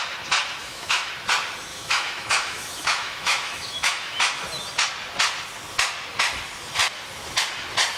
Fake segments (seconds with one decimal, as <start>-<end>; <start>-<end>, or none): 0.6-1.1; 1.7-4.2